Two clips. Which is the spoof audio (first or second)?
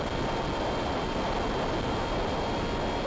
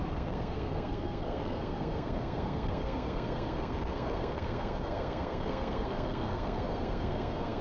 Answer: second